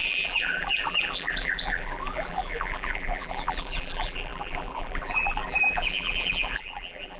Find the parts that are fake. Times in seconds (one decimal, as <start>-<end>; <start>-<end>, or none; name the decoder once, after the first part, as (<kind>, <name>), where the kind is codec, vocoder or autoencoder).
0.0-7.2 (vocoder, BigVGAN v2)